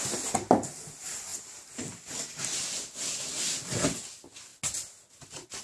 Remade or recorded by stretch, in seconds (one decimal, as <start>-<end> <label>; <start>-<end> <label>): 0.0-5.6 recorded